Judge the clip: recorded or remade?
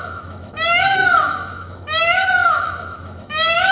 remade